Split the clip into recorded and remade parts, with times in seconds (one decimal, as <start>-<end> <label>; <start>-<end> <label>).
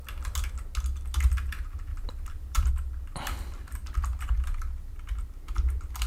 0.0-1.9 recorded; 1.9-2.7 remade; 2.7-6.1 recorded